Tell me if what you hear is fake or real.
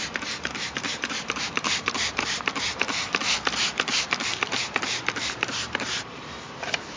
fake